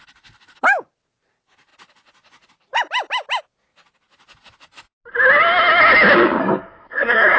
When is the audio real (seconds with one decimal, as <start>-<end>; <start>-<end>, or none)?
0.0-6.4